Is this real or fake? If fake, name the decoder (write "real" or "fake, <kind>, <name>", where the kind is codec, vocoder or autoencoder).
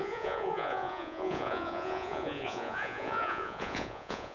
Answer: fake, vocoder, Vocos